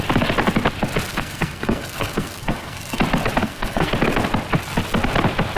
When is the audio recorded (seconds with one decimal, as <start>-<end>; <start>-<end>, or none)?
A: 0.0-1.1; 3.0-3.4; 3.9-5.6